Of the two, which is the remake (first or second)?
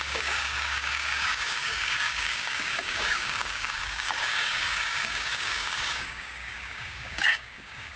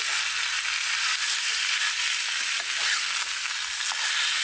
first